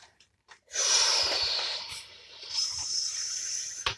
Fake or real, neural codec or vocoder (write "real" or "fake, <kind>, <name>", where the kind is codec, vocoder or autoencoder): fake, vocoder, BigVGAN v2